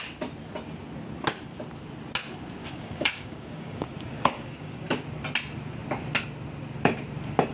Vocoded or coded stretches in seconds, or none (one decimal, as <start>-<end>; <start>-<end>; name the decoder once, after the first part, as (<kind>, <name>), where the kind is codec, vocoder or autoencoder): 2.6-4.9 (codec, DAC)